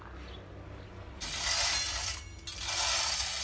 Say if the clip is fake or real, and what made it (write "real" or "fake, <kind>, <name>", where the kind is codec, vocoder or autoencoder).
real